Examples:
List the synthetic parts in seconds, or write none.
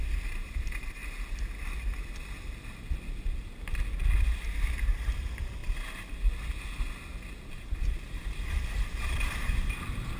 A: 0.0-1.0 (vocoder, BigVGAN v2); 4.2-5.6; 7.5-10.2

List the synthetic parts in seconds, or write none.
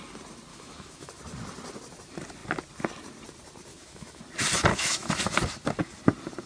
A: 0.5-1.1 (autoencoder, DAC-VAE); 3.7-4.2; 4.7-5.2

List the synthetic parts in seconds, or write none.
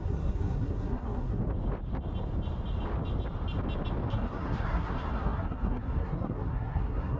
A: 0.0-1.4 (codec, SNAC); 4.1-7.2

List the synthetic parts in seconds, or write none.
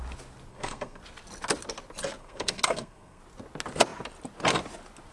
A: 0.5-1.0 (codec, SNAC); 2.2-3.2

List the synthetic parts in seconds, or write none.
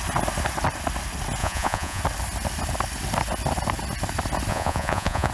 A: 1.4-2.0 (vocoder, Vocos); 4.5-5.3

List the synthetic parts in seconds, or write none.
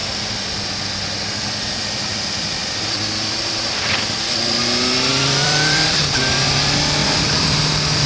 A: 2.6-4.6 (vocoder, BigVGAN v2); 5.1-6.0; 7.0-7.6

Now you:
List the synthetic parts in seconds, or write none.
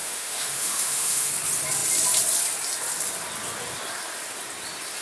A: 0.0-1.3 (autoencoder, DAC-VAE)